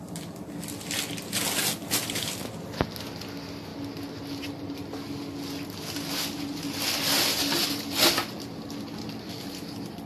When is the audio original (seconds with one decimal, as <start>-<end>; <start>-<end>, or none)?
0.0-10.1